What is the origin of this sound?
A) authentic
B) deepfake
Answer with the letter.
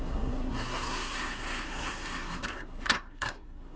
B